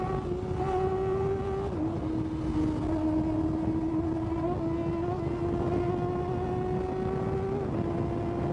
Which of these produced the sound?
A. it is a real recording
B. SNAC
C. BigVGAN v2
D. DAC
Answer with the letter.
A